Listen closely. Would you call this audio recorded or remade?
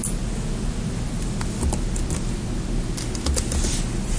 recorded